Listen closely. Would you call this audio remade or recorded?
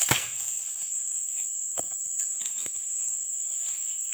remade